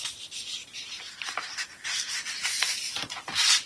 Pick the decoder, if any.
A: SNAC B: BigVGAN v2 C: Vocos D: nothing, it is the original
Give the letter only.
D